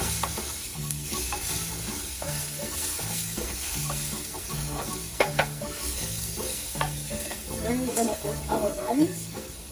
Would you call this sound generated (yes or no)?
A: yes